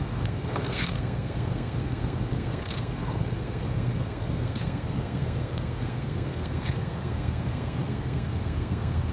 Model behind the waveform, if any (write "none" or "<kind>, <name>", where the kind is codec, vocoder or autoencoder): codec, SNAC